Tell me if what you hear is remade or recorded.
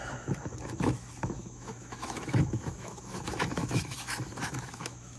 remade